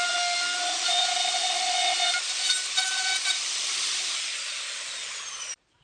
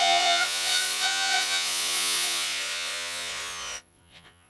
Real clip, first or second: first